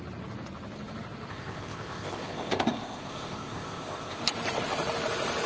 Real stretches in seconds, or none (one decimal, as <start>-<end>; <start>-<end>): 0.0-1.3; 4.2-5.5